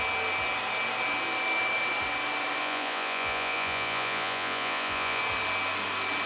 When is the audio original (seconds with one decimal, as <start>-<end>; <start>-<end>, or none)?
0.0-2.6; 5.2-6.3